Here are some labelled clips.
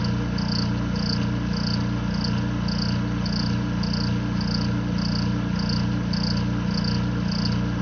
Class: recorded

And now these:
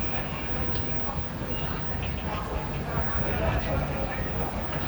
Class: recorded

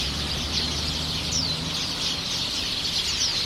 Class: recorded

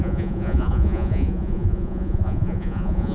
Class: remade